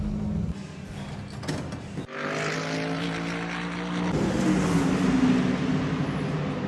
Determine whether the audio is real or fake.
real